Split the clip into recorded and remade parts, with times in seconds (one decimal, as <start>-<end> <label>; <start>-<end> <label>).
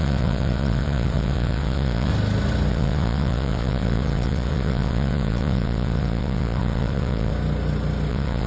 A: 0.0-2.1 remade; 2.1-2.7 recorded; 2.7-7.3 remade; 7.3-8.1 recorded; 8.1-8.5 remade